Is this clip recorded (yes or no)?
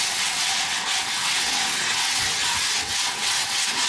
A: no